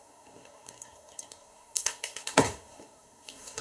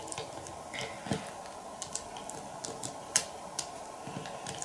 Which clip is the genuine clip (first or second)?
second